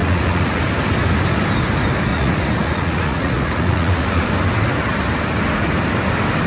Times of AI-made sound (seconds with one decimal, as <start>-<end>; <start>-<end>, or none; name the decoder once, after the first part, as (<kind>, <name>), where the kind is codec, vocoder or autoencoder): 0.0-0.6 (vocoder, Vocos); 2.1-4.3